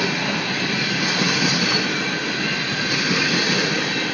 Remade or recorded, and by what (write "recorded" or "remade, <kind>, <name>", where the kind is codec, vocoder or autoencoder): recorded